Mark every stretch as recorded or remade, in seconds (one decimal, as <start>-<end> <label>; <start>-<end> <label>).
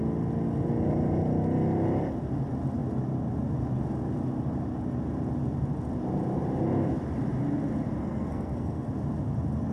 0.0-8.0 recorded; 8.0-8.9 remade; 8.9-9.7 recorded